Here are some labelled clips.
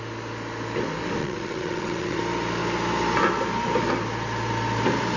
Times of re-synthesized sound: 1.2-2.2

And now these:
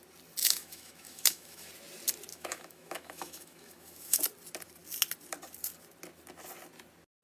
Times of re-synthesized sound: 0.4-1.7; 2.3-4.2

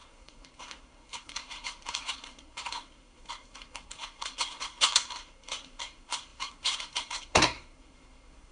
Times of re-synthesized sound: 0.0-8.5